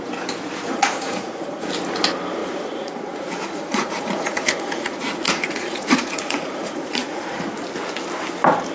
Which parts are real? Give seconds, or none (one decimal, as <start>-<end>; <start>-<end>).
0.0-0.7; 1.7-2.4; 7.4-8.7